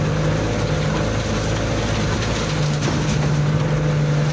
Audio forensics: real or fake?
real